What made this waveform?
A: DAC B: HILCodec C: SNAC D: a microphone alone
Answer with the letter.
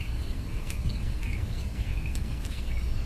C